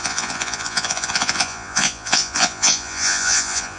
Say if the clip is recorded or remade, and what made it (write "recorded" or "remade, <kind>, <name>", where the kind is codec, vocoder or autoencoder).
remade, vocoder, Vocos